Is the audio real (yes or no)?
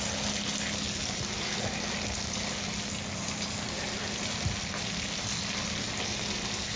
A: yes